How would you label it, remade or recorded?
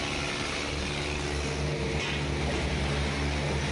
recorded